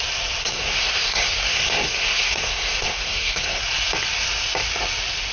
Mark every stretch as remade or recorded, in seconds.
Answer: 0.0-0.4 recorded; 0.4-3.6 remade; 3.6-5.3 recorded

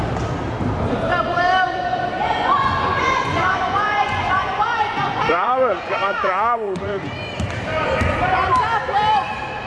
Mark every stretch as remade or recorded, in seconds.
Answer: 0.0-2.4 recorded; 2.4-7.1 remade; 7.1-9.7 recorded

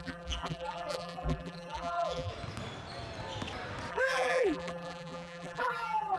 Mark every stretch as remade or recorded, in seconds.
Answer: 0.0-2.3 remade; 2.3-3.9 recorded; 3.9-6.2 remade

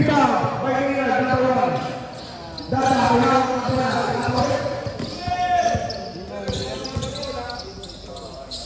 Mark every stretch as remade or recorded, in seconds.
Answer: 0.0-4.0 recorded; 4.0-4.9 remade; 4.9-8.7 recorded

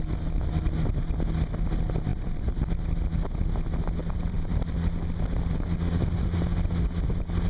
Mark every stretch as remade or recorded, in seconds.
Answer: 0.0-2.1 recorded; 2.1-2.7 remade; 2.7-4.0 recorded; 4.0-4.7 remade; 4.7-7.5 recorded